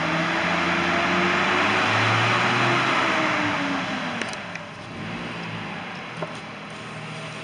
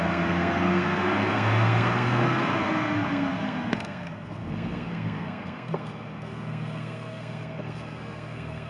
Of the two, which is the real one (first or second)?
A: first